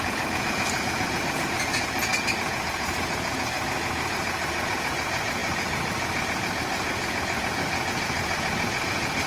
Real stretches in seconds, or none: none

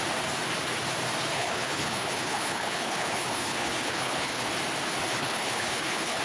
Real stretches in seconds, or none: 0.0-1.3; 4.5-5.1

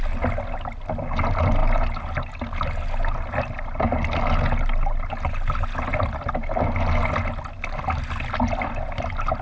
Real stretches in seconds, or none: 0.0-9.4

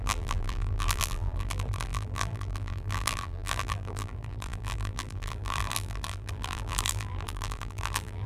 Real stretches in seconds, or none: none

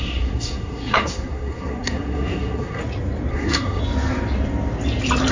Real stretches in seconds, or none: 2.8-3.3; 3.8-5.3

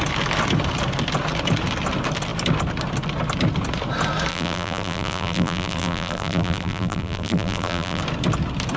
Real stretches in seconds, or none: 0.0-4.3; 8.0-8.8

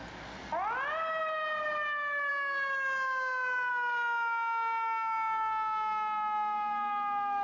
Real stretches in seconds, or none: 0.0-7.4